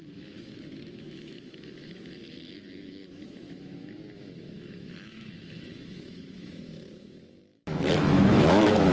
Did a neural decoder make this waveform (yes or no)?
yes